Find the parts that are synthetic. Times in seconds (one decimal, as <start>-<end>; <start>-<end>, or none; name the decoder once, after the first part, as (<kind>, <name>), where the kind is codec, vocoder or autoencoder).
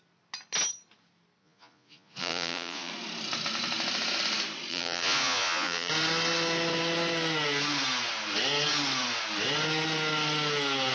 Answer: 1.4-2.9 (vocoder, Vocos); 4.7-5.9